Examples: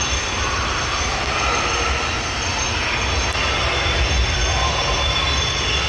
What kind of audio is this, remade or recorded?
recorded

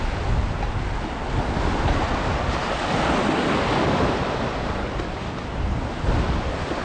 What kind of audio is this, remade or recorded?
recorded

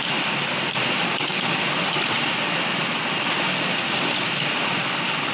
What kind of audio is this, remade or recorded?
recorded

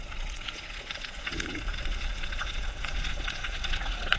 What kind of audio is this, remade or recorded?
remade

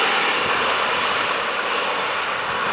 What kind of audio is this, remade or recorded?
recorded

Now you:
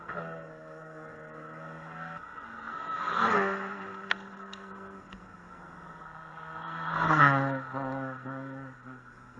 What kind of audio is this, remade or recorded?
remade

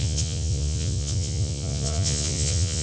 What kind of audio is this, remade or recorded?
remade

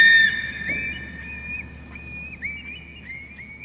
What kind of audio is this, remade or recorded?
recorded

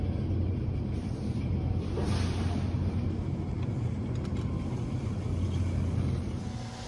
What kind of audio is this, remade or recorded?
recorded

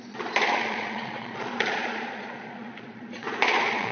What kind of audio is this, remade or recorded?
remade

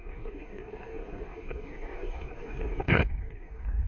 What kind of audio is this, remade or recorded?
remade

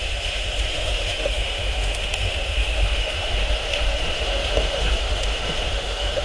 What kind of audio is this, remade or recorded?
remade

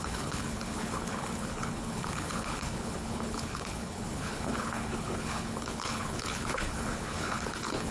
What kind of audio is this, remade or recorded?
remade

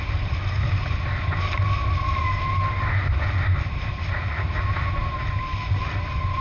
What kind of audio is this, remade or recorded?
recorded